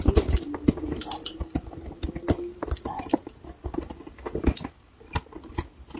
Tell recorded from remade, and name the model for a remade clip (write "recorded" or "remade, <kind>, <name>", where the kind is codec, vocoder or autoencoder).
recorded